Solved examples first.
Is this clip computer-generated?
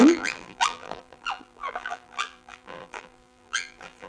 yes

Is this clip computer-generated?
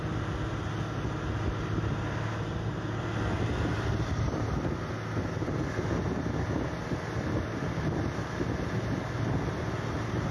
no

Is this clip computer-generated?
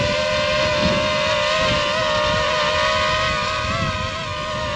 no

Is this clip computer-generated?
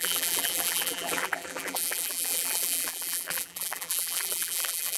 yes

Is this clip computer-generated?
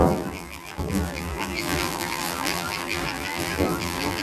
yes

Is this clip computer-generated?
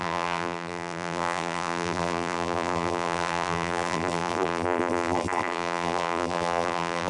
yes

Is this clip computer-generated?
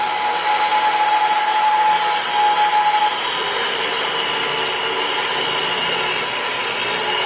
no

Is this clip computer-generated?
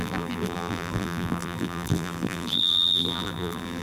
yes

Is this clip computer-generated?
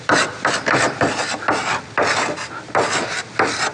yes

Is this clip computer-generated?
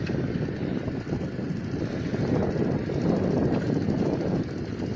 no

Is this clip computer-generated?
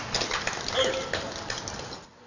no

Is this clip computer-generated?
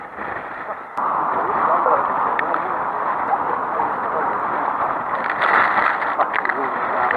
yes